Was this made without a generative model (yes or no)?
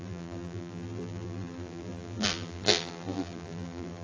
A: no